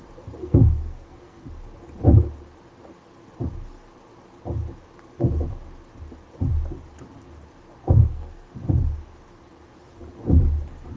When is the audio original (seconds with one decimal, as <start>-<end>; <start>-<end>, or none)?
0.0-0.4; 1.5-7.8; 8.5-11.0